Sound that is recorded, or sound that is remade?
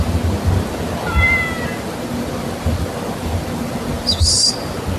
recorded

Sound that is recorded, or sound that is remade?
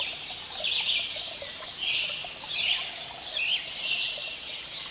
recorded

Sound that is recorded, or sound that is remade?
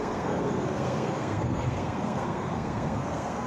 remade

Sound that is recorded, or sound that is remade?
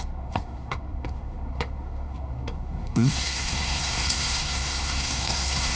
remade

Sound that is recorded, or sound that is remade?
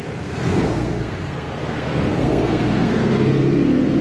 remade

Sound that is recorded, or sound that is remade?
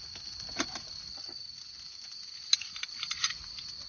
recorded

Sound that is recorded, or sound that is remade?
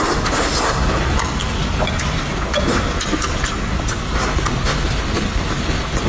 recorded